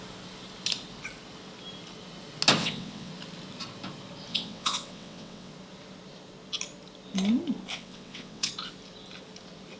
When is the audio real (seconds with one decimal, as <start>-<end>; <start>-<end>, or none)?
0.0-2.6; 3.1-4.3; 5.5-7.7; 8.5-9.8